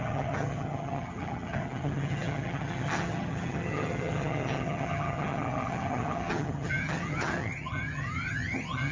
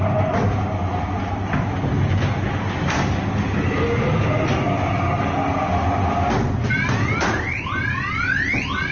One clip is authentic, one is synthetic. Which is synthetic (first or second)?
first